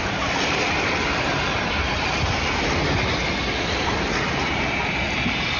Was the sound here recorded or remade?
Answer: recorded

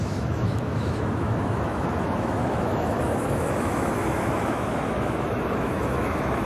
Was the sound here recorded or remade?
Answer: remade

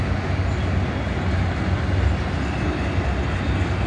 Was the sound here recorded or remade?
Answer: recorded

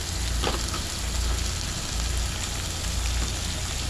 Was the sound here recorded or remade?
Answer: recorded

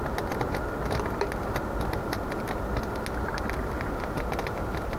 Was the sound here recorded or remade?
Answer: recorded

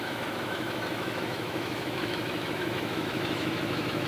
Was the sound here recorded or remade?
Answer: remade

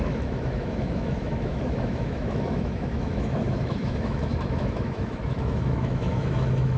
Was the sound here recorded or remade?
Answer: remade